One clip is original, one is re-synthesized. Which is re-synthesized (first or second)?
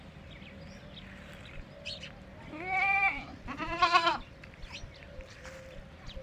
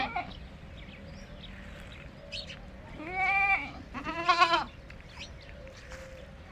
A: first